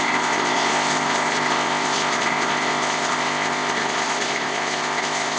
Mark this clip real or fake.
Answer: fake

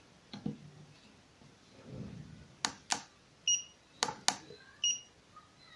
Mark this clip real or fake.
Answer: real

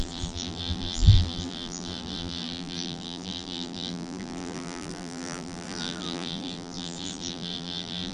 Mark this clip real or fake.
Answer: fake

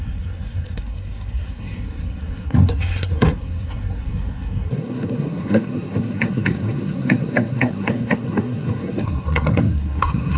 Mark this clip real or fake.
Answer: fake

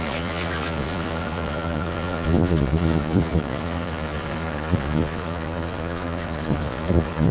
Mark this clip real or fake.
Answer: fake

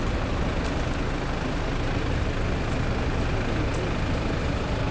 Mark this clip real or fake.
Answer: real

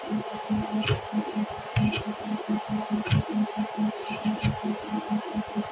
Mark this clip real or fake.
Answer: real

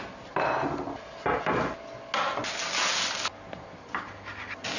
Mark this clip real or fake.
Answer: real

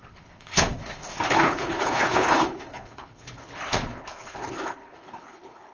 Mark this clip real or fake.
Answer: fake